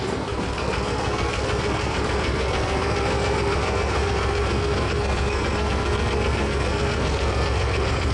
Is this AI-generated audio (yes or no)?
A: yes